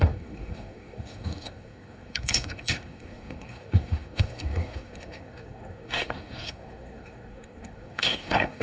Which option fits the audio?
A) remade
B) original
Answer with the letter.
A